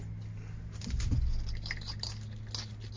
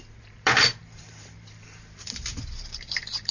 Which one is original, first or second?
first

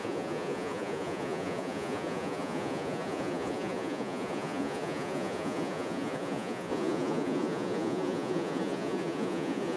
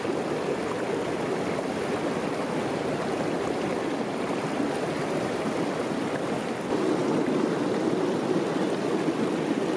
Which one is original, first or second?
second